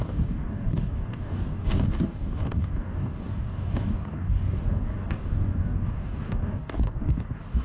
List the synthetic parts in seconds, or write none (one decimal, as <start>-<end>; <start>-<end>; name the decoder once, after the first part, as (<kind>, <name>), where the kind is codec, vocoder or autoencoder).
0.0-7.6 (codec, DAC)